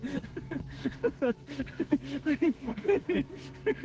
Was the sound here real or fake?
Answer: fake